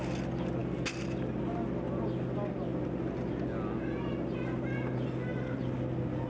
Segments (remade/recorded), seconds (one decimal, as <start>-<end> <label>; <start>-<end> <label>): 0.0-6.3 recorded